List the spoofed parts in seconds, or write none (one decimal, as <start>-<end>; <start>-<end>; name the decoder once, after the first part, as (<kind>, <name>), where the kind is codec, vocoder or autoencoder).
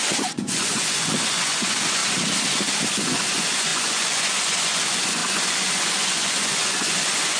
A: 0.0-2.0 (vocoder, Vocos); 3.0-7.4